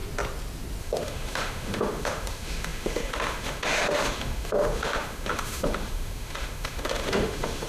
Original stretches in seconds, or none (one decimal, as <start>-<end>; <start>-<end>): 0.0-0.8

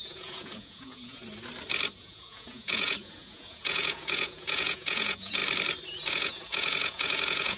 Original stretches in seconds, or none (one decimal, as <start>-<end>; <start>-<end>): 1.2-2.0; 5.4-6.1

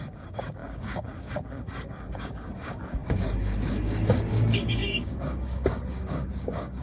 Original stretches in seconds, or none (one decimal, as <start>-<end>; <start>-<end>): none

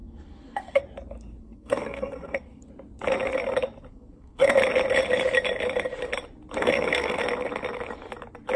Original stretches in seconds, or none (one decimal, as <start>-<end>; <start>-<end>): 0.8-1.4; 2.7-3.9; 4.5-6.6; 7.2-8.6

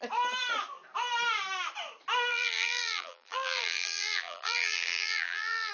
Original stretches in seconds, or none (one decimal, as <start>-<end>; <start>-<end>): 0.0-2.3

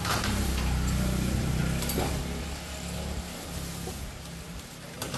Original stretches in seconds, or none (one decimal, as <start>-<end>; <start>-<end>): 1.6-4.4

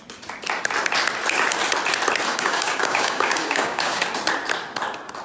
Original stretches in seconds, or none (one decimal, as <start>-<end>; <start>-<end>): 0.0-2.3; 4.0-5.2